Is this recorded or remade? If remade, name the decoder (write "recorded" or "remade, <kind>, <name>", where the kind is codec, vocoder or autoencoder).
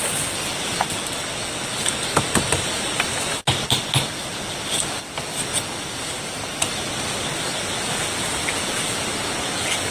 recorded